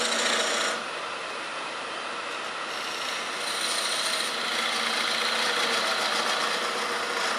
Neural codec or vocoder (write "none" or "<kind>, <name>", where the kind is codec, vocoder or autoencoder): none